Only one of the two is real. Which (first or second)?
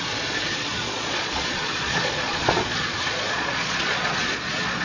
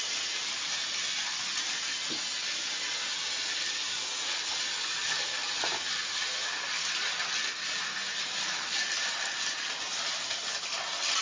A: second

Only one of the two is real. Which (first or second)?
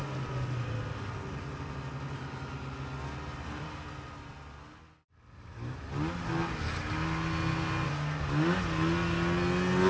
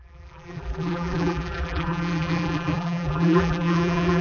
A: first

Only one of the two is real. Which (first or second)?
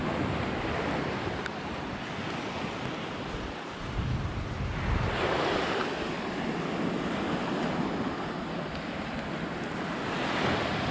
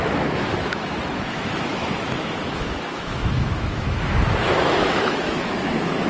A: first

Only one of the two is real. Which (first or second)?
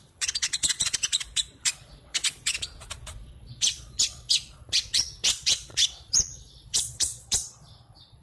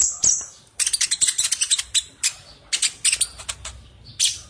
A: second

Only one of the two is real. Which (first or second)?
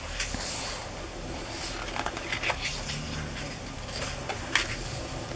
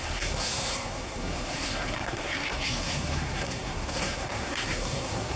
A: first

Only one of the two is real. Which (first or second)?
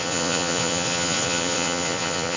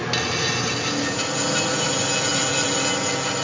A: second